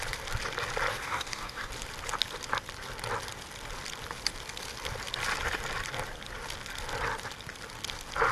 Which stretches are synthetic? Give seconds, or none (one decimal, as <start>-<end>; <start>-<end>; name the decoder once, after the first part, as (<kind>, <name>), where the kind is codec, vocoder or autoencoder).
0.9-1.7 (codec, DAC)